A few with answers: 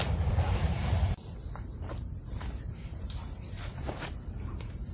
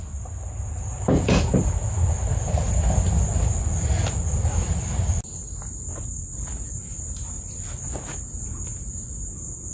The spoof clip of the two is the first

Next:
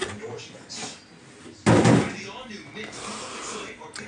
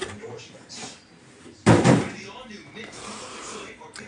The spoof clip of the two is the second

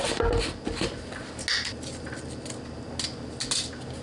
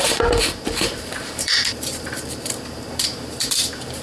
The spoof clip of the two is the second